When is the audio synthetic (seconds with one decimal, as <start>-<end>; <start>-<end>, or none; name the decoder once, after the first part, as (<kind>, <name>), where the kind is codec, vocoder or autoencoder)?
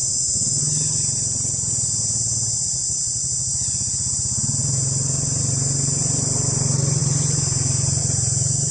0.0-0.6 (autoencoder, DAC-VAE)